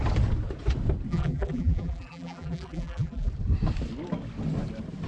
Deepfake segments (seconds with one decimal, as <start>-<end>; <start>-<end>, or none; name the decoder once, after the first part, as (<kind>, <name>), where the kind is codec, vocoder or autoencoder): 1.1-3.3 (vocoder, BigVGAN v2)